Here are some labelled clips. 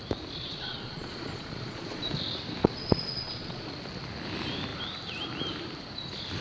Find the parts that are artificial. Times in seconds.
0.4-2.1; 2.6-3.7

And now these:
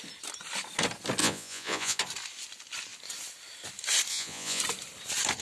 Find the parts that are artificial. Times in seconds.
1.2-2.0; 4.1-4.6

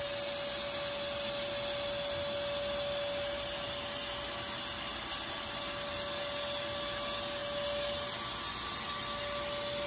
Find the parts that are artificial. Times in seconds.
none

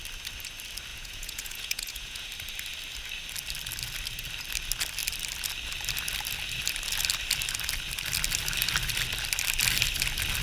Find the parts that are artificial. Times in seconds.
0.9-2.3

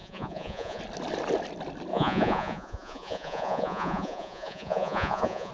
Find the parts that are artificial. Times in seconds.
0.0-0.8; 1.9-5.5